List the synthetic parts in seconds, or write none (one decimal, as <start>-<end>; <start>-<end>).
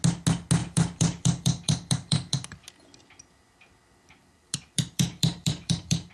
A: 0.6-2.7; 4.2-6.1